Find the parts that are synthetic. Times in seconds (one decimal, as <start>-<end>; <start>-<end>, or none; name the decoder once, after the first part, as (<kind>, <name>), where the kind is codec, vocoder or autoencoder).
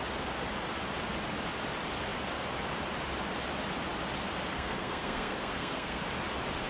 4.5-6.0 (codec, SNAC)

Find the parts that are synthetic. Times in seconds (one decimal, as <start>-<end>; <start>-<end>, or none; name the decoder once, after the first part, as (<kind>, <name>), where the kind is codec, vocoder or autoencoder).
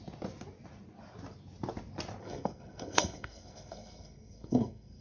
2.2-5.0 (codec, SNAC)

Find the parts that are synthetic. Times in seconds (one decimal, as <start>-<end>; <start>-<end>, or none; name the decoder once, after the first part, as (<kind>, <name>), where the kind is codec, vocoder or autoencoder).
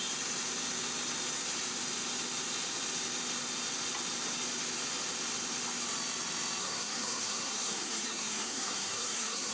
6.6-9.5 (codec, SNAC)